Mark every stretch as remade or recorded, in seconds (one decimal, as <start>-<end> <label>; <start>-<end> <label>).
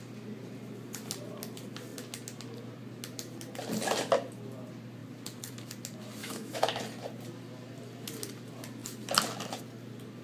0.0-6.2 recorded; 6.2-6.8 remade; 6.8-10.2 recorded